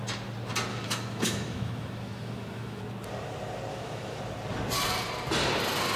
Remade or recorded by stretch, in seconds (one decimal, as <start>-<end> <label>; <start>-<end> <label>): 0.0-0.7 recorded; 0.7-2.8 remade; 2.8-3.7 recorded; 3.7-4.2 remade; 4.2-6.0 recorded